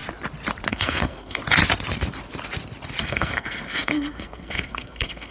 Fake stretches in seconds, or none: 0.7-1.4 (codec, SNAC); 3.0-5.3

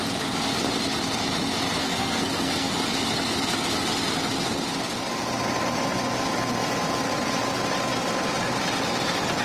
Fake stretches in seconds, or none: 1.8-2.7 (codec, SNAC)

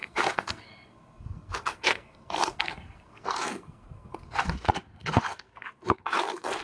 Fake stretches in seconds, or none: 0.0-6.6 (codec, SNAC)

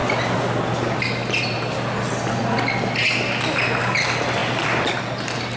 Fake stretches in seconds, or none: none